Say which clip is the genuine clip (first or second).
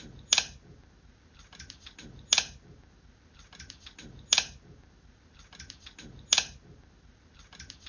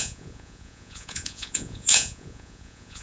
first